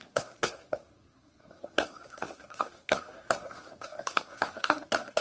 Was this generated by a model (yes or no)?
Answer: yes